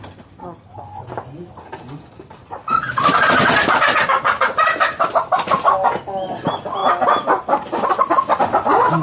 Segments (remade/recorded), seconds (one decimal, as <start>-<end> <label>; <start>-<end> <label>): 0.0-9.0 recorded